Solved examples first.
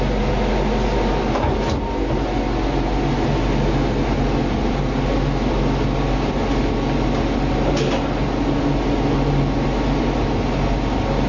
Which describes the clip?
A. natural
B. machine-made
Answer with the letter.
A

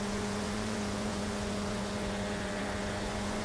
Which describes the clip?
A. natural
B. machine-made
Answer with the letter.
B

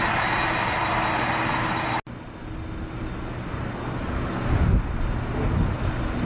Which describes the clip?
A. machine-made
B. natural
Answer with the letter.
B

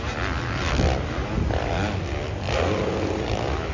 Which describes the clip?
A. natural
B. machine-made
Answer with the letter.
A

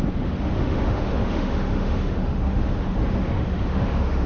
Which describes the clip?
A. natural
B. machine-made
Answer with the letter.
B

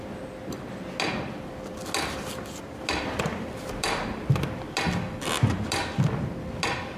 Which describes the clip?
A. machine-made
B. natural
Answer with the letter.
B